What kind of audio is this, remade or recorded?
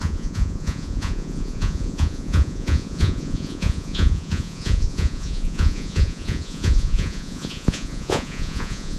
remade